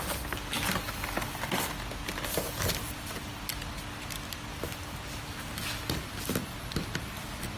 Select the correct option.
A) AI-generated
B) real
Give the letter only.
B